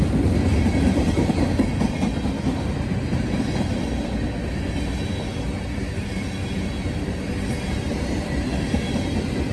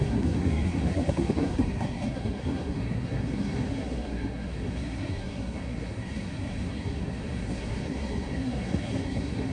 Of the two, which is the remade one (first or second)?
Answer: second